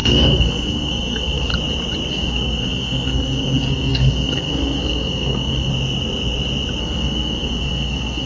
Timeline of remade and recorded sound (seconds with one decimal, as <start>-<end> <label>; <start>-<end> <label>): 0.0-1.5 remade; 1.5-2.1 recorded; 2.1-5.7 remade; 5.7-6.8 recorded; 6.8-8.3 remade